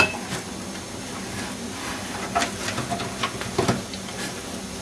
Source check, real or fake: real